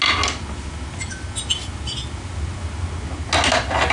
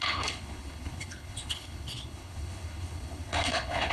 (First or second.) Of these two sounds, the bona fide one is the first